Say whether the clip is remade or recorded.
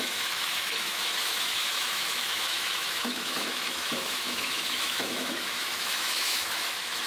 remade